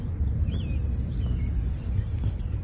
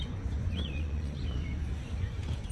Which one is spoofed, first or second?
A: second